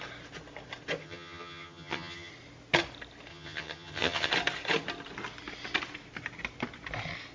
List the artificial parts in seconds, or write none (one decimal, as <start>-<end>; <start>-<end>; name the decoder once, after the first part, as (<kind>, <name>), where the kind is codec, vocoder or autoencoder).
1.0-2.3 (vocoder, HiFi-GAN); 3.3-4.3